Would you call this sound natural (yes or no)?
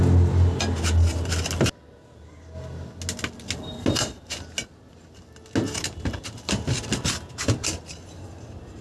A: yes